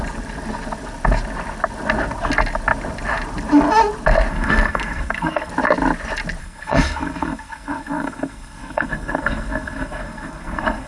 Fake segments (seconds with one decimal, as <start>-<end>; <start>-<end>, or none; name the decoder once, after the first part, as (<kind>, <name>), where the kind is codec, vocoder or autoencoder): 4.3-5.5 (codec, SNAC); 6.4-10.9